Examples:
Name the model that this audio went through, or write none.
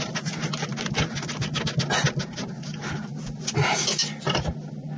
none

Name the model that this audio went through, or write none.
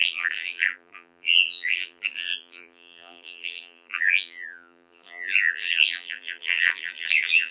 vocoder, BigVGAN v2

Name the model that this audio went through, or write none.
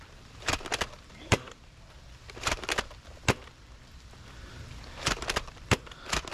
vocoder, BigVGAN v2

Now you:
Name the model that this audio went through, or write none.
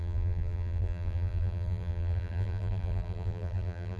vocoder, BigVGAN v2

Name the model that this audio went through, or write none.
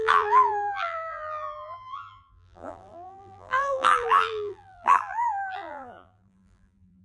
vocoder, BigVGAN v2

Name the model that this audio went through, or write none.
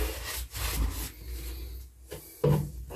none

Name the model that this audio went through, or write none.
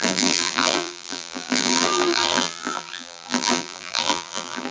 vocoder, BigVGAN v2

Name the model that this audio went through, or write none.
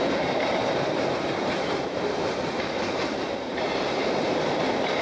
vocoder, BigVGAN v2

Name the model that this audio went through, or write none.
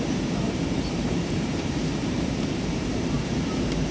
vocoder, BigVGAN v2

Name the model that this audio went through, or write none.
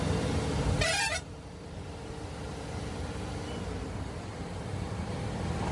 vocoder, BigVGAN v2